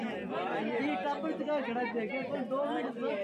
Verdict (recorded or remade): recorded